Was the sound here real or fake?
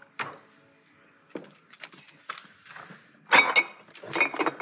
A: real